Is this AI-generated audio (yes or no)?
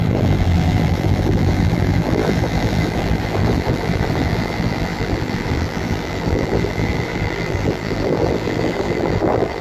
yes